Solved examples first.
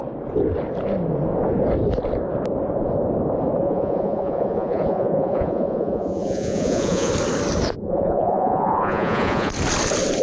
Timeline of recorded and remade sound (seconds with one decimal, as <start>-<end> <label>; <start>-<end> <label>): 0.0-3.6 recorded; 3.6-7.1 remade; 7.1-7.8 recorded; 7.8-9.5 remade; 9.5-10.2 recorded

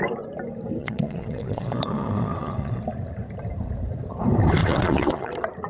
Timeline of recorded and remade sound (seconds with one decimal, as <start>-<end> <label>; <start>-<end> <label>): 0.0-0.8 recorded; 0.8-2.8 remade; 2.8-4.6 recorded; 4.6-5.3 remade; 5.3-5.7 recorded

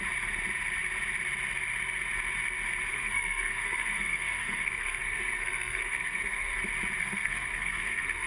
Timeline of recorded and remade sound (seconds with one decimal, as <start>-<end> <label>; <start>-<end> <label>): 0.0-2.9 recorded; 2.9-6.6 remade; 6.6-7.0 recorded; 7.0-8.3 remade